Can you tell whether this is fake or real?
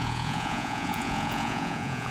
fake